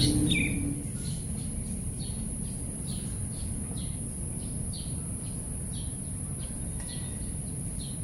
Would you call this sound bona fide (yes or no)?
yes